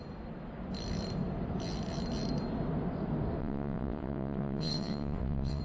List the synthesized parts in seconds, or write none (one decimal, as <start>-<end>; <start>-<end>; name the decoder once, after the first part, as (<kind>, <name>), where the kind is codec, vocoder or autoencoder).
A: 3.4-5.6 (vocoder, WaveNeXt)